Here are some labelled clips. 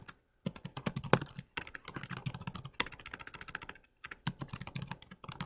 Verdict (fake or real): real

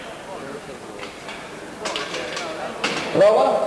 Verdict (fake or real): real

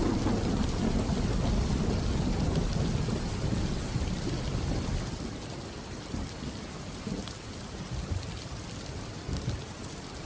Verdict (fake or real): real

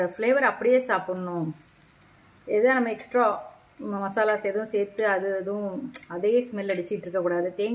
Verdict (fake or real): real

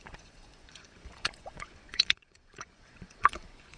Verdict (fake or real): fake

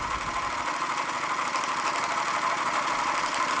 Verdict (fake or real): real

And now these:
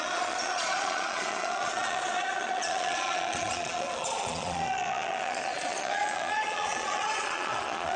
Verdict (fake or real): fake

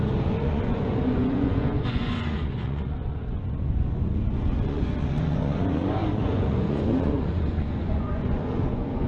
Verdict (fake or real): fake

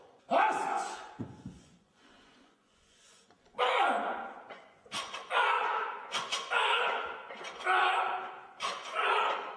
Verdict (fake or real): fake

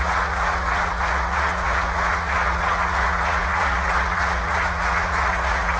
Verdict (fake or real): fake